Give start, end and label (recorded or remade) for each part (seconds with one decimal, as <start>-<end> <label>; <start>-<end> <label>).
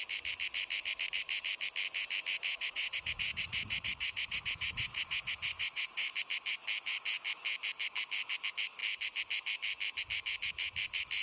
0.0-2.5 recorded; 2.5-6.1 remade; 6.1-11.2 recorded